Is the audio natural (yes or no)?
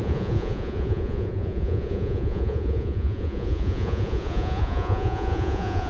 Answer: no